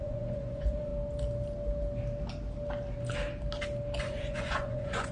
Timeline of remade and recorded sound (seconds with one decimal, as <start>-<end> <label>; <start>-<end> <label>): 0.0-0.9 remade; 0.9-4.0 recorded; 4.0-5.1 remade